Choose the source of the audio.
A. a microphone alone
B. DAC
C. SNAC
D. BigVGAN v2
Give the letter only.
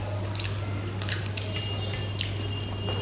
A